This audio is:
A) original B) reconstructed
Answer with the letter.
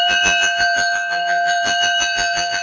B